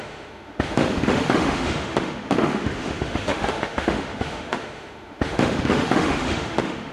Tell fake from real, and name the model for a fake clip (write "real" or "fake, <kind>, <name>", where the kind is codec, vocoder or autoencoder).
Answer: fake, autoencoder, DAC-VAE